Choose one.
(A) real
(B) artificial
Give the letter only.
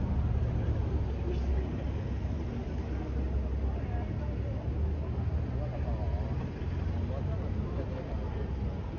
A